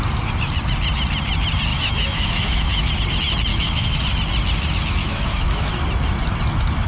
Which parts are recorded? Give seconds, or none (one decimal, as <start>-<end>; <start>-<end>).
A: 0.0-1.7; 2.9-3.5; 4.0-5.0; 5.7-6.9